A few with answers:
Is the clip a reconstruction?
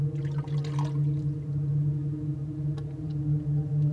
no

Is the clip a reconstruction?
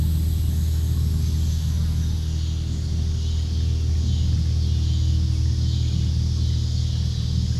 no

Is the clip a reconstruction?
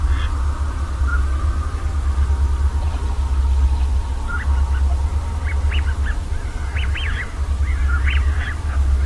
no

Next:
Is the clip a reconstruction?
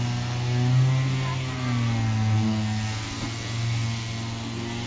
no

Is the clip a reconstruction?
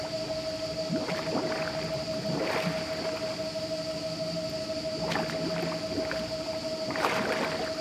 no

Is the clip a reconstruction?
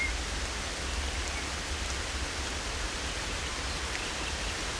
no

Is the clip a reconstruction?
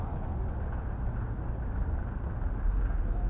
no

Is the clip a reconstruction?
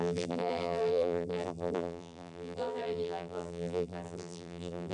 yes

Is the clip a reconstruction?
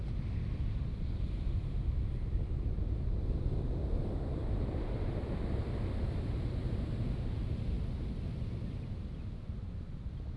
no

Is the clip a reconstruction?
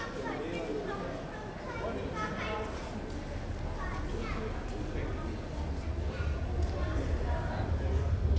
no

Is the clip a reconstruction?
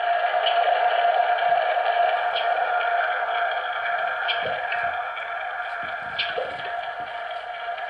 no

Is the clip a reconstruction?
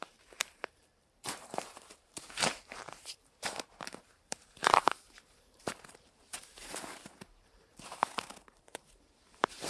yes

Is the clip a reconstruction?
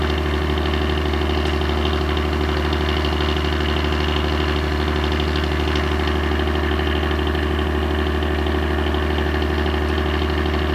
no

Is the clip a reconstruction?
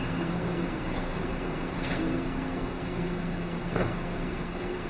yes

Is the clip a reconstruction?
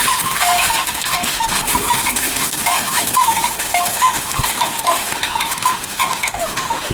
yes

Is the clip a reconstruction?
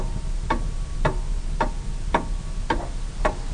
no